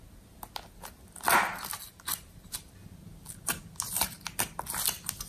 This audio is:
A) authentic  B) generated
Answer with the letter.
A